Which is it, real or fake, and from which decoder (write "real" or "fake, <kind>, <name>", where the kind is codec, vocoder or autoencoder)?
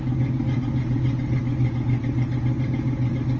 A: real